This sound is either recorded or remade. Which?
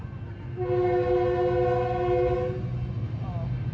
recorded